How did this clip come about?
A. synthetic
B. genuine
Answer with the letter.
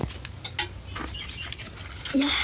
B